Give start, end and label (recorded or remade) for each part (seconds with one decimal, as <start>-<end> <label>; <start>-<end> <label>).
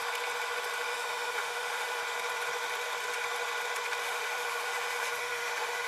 0.0-0.9 recorded; 0.9-2.0 remade; 2.0-4.0 recorded; 4.0-5.9 remade